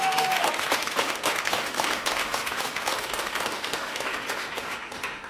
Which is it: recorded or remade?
remade